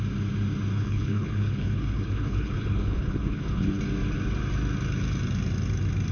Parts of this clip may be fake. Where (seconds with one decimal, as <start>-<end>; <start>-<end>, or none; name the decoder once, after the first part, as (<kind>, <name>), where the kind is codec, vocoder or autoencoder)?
0.7-3.8 (codec, HILCodec)